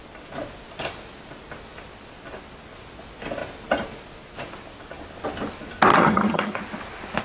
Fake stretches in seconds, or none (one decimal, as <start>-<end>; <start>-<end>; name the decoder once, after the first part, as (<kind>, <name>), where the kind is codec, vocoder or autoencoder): 5.9-6.6 (vocoder, HiFi-GAN)